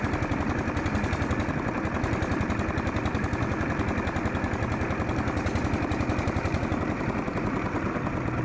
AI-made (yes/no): no